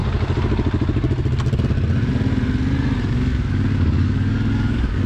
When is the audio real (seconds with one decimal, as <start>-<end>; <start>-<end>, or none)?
0.0-3.1